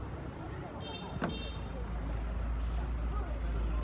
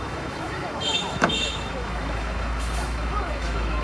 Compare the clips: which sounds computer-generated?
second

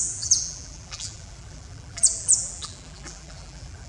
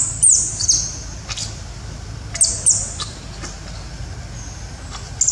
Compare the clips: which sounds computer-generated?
first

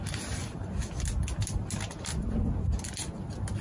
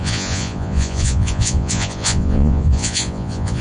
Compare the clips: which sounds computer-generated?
second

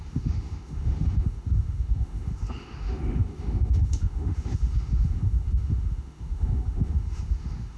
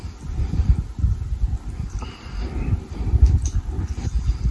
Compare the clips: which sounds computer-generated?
first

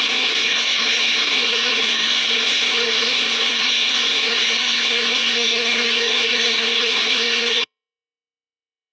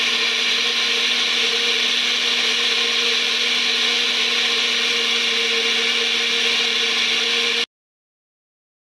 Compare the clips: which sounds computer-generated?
first